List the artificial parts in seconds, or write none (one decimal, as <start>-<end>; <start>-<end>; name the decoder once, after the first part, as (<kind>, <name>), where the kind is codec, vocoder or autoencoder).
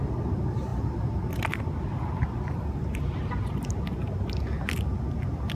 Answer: none